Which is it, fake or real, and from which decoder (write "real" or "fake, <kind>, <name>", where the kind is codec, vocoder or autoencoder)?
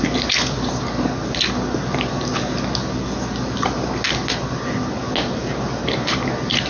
real